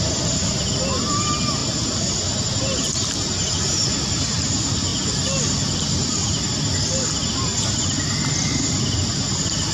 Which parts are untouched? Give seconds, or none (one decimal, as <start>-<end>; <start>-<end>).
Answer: 0.0-9.7